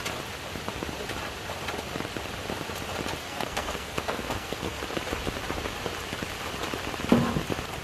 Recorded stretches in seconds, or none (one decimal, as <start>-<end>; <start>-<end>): 0.0-3.2; 4.8-7.8